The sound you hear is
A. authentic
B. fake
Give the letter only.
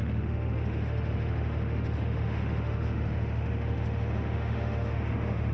B